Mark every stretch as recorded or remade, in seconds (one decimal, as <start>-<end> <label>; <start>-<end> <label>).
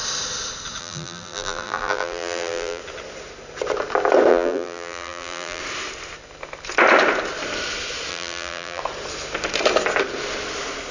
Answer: 0.0-0.8 recorded; 0.8-2.8 remade; 2.8-4.3 recorded; 4.3-5.6 remade; 5.6-8.1 recorded; 8.1-8.8 remade; 8.8-10.9 recorded